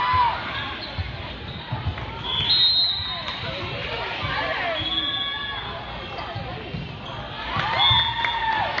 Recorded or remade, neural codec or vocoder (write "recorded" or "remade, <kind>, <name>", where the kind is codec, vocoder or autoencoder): recorded